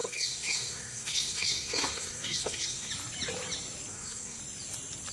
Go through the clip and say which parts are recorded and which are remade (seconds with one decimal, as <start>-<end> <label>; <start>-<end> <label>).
0.0-2.9 remade; 2.9-3.9 recorded; 3.9-4.4 remade; 4.4-5.1 recorded